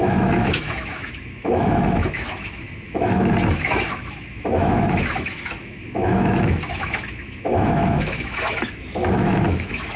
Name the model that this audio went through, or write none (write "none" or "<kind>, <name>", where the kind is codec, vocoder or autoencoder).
autoencoder, DAC-VAE